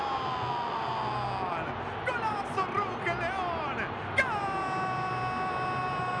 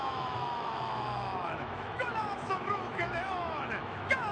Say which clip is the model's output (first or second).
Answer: second